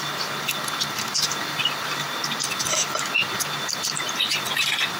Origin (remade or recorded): remade